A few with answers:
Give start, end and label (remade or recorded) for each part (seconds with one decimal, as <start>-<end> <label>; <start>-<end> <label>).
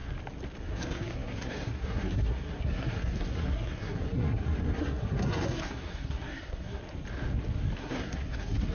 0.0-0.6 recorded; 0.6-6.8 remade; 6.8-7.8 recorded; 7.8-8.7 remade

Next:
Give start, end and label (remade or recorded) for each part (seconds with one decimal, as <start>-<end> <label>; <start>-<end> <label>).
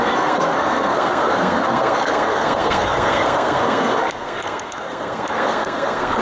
0.0-6.2 remade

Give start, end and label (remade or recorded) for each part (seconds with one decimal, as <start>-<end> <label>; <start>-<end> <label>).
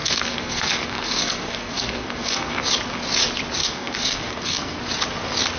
0.0-2.6 remade; 2.6-3.6 recorded; 3.6-4.8 remade; 4.8-5.6 recorded